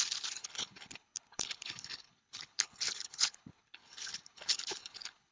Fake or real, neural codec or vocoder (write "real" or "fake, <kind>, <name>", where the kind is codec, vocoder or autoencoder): fake, codec, HILCodec